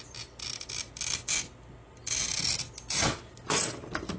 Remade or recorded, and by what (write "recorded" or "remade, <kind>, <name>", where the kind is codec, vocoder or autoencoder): recorded